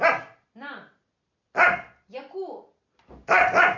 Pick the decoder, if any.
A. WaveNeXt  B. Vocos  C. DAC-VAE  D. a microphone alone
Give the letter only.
D